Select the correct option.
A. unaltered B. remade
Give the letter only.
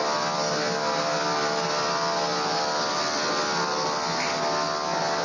A